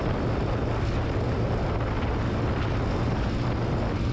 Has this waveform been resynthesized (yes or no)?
no